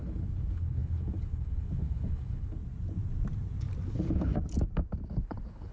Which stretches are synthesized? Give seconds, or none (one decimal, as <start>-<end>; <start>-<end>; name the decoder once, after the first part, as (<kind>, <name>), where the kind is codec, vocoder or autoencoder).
0.0-2.6 (codec, HILCodec); 3.9-4.3; 5.1-5.7